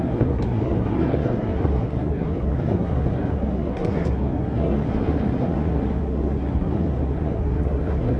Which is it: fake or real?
fake